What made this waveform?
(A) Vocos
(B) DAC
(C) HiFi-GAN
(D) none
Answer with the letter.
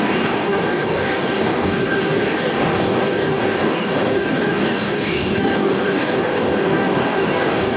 B